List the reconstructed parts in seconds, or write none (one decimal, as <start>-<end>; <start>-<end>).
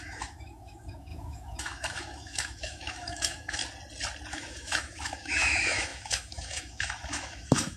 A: 0.0-3.6; 4.3-7.8